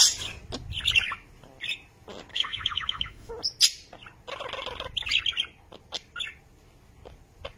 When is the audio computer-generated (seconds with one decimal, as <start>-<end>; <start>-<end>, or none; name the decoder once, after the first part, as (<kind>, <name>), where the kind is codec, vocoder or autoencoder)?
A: 2.3-3.3 (autoencoder, DAC-VAE)